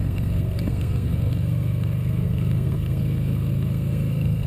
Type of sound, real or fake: fake